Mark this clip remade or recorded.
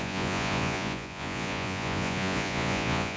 remade